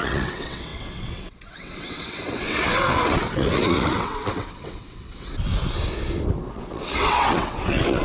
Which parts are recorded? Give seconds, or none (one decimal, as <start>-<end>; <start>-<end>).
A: 5.5-6.5

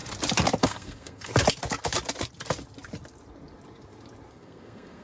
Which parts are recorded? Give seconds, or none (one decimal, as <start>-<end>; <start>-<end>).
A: 0.0-0.6; 1.3-4.3

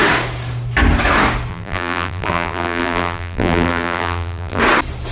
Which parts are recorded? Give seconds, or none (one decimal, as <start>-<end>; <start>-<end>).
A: 0.0-1.5; 4.6-5.1

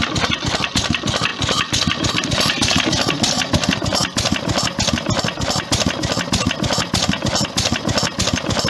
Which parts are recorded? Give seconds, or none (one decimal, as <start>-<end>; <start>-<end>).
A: 0.0-8.7

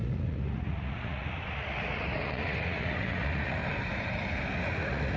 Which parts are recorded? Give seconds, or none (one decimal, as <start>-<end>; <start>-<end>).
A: 3.6-4.5